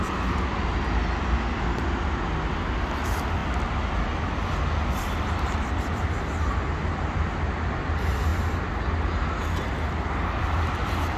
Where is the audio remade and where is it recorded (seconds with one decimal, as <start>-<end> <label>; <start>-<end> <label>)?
0.0-11.2 recorded

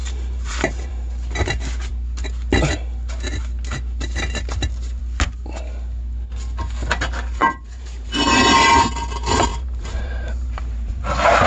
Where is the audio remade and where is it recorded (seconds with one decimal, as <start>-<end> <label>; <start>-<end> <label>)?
0.0-0.9 remade; 0.9-7.4 recorded; 7.4-8.4 remade; 8.4-9.5 recorded; 9.5-10.9 remade; 10.9-11.5 recorded

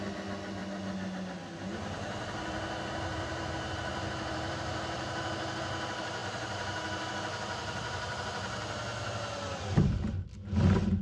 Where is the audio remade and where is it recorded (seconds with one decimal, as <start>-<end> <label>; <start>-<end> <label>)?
0.0-3.1 recorded; 3.1-5.3 remade; 5.3-7.6 recorded; 7.6-8.2 remade; 8.2-11.0 recorded